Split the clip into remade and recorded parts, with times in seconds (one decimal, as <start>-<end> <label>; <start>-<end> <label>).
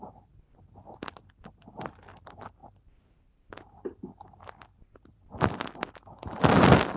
0.0-7.0 recorded